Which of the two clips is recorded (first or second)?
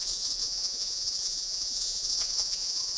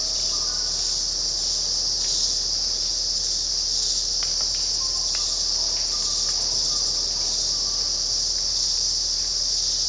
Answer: second